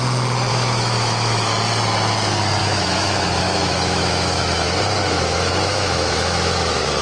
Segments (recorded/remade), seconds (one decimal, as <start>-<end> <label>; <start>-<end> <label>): 0.0-0.5 recorded; 0.5-1.5 remade; 1.5-2.6 recorded; 2.6-7.0 remade